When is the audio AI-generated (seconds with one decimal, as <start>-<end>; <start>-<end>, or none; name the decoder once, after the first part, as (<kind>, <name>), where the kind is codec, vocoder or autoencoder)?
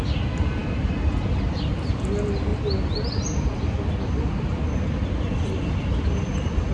5.0-5.6 (vocoder, BigVGAN v2)